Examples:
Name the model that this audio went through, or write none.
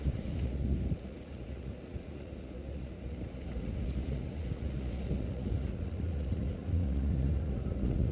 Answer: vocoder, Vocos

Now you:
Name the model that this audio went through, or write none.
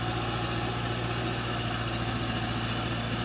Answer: none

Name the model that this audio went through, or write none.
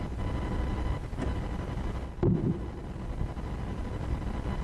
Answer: none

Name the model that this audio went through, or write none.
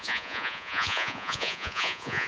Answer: vocoder, Vocos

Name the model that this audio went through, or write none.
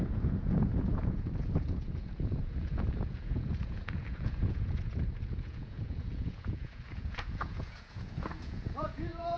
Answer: vocoder, Vocos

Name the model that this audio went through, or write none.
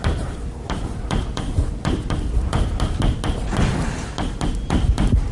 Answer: none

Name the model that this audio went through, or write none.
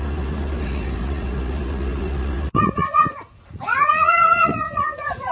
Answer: vocoder, Vocos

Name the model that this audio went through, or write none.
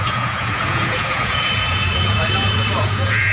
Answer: vocoder, Vocos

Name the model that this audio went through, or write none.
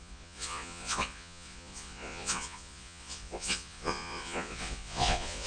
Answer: vocoder, Vocos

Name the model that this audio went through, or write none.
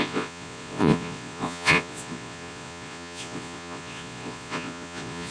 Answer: vocoder, Vocos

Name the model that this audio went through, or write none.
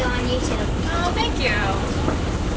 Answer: none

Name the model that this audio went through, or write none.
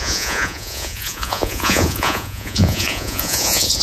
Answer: vocoder, Vocos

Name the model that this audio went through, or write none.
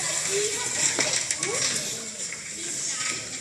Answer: none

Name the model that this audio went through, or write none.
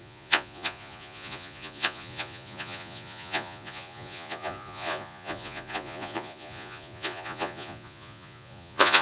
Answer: vocoder, Vocos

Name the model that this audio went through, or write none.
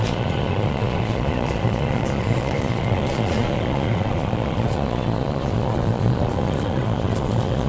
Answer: vocoder, Vocos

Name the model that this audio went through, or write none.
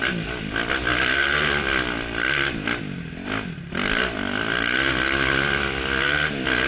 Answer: none